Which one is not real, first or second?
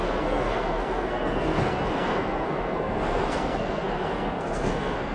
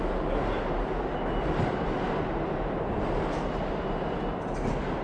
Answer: first